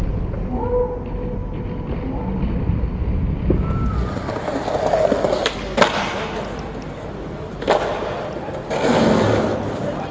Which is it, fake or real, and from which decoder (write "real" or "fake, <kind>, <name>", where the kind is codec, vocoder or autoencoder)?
real